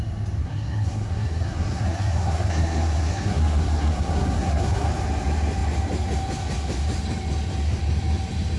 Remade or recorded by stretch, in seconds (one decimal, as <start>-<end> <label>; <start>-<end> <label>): 0.0-0.4 recorded; 0.4-4.9 remade; 4.9-8.6 recorded